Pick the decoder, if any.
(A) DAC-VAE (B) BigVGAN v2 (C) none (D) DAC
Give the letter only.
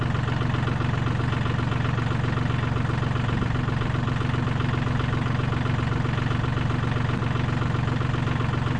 C